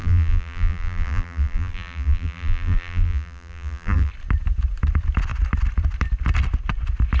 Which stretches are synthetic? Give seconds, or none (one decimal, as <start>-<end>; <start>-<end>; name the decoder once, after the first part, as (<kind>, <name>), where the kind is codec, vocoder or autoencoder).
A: 0.0-4.1 (vocoder, BigVGAN v2)